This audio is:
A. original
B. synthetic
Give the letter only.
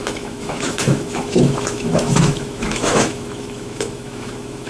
B